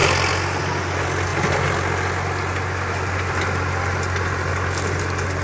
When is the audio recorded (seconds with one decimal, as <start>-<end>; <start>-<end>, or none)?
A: 0.0-5.4